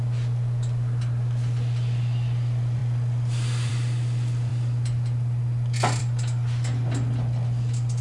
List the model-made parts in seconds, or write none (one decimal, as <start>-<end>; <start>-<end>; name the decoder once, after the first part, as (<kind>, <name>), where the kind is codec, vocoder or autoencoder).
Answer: none